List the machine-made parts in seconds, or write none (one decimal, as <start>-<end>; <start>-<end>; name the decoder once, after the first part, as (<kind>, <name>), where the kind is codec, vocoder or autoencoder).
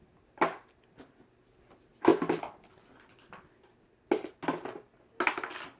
none